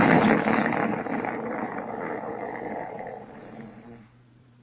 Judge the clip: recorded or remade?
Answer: remade